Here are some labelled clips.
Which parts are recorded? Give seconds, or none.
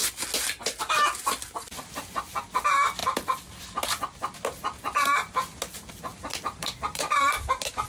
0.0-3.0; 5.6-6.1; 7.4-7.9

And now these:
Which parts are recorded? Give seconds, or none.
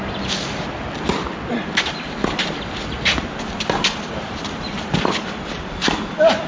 0.0-6.5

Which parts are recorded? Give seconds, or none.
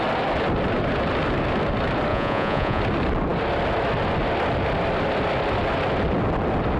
0.0-2.1; 2.8-6.8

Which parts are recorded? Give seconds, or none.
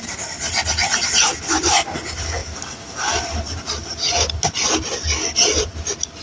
0.0-6.2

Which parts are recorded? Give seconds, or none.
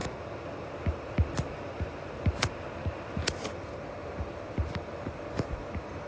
none